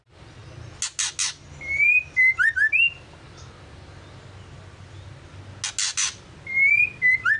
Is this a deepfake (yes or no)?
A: no